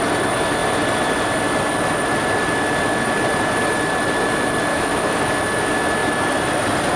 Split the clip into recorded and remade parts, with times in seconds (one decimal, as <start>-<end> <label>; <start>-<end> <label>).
0.0-4.7 recorded; 4.7-5.4 remade; 5.4-7.0 recorded